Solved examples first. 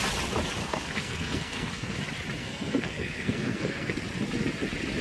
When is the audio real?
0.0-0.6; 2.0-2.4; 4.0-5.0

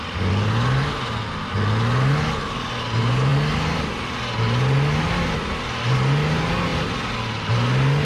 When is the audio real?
0.0-8.0

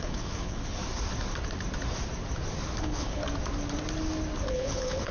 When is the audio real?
0.8-2.8; 3.2-4.5

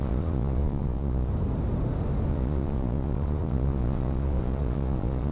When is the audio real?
1.3-2.3

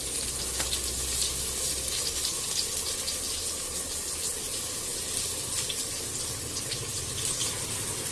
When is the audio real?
0.0-8.1

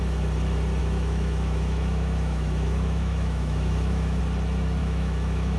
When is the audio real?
0.0-0.8; 4.2-4.8

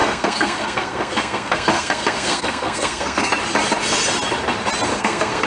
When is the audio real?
3.3-4.9